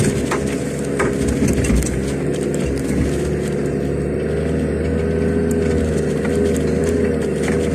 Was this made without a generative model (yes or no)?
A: yes